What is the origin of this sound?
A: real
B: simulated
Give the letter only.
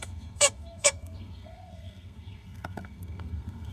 B